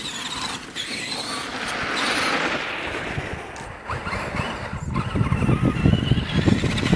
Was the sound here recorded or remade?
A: recorded